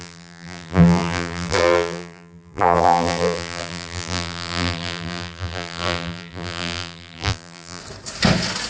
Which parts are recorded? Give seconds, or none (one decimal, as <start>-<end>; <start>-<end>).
7.8-8.7